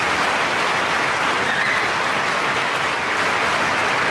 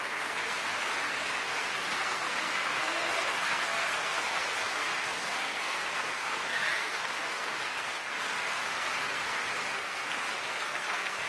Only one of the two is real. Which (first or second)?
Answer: first